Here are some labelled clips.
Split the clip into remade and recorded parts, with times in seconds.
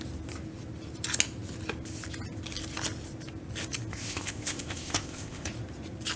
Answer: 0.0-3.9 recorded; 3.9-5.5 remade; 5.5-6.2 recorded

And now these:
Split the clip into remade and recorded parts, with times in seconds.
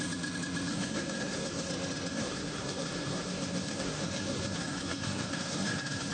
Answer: 0.0-0.7 recorded; 0.7-1.7 remade; 1.7-2.1 recorded; 2.1-6.1 remade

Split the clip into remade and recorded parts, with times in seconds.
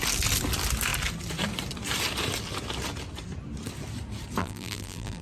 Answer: 0.0-4.4 recorded; 4.4-5.2 remade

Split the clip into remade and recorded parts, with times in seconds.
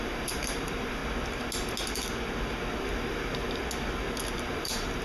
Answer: 0.0-1.0 remade; 1.0-2.8 recorded; 2.8-3.6 remade; 3.6-4.5 recorded; 4.5-5.0 remade